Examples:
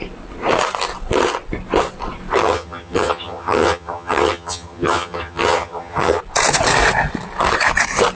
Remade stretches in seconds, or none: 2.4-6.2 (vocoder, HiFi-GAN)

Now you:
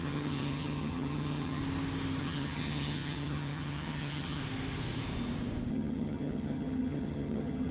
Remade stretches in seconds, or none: 0.0-1.6 (vocoder, HiFi-GAN); 2.2-4.4; 5.7-7.7